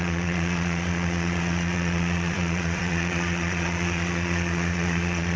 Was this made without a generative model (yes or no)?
no